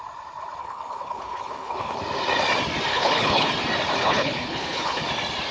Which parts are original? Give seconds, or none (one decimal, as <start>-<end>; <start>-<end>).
0.0-0.6; 2.0-2.9; 3.5-4.0; 5.0-5.5